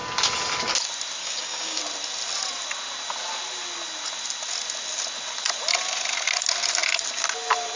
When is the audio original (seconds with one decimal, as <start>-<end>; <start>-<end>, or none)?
0.0-1.2; 1.8-7.8